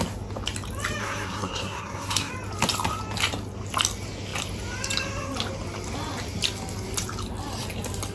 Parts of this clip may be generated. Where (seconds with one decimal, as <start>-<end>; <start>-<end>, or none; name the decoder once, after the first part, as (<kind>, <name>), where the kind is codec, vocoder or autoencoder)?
1.0-2.3 (codec, SNAC)